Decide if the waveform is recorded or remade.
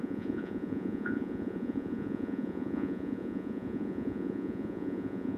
remade